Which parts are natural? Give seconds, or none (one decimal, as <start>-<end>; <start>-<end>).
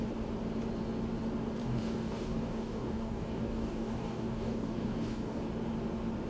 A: 0.0-1.6; 5.4-6.3